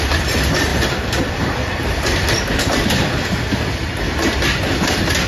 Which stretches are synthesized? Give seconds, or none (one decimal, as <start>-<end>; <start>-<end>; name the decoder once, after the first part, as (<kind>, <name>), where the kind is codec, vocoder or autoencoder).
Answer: none